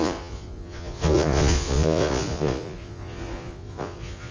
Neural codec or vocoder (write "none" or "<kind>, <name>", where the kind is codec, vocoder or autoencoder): vocoder, Vocos